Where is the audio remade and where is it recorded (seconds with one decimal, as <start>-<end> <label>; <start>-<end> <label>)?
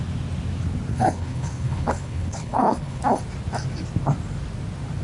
0.0-0.9 recorded; 0.9-3.0 remade; 3.0-5.0 recorded